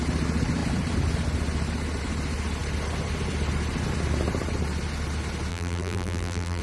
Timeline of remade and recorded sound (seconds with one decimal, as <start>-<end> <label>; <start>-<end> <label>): 0.0-5.5 recorded; 5.5-6.6 remade